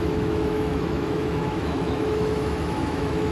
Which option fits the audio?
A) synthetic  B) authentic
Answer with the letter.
A